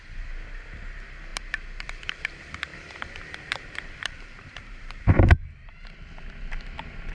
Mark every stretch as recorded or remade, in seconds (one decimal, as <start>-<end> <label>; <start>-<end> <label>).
0.0-1.3 recorded; 1.3-1.9 remade; 1.9-2.7 recorded; 2.7-5.7 remade; 5.7-7.1 recorded